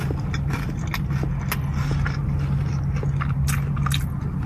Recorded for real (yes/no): yes